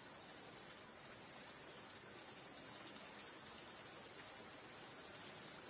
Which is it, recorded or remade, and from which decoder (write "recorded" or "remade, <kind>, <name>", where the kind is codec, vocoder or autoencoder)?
recorded